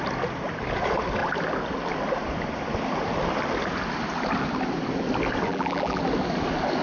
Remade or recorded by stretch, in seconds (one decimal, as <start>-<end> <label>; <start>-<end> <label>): 0.0-5.5 recorded; 5.5-6.0 remade; 6.0-6.8 recorded